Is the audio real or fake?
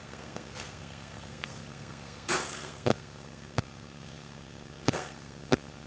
fake